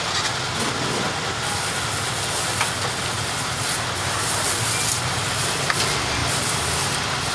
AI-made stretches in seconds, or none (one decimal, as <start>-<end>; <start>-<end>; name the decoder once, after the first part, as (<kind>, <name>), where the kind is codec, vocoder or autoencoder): none